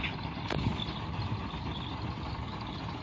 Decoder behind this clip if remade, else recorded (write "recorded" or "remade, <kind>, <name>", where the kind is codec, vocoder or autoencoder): recorded